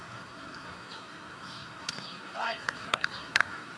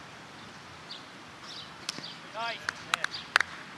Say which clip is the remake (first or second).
first